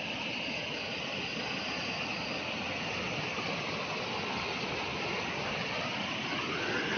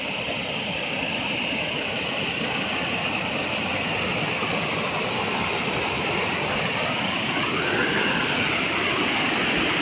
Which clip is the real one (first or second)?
first